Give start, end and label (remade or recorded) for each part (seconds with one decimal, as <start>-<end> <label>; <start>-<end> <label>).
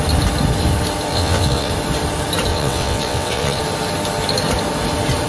0.0-1.1 recorded; 1.1-1.7 remade; 1.7-2.5 recorded; 2.5-3.6 remade; 3.6-5.3 recorded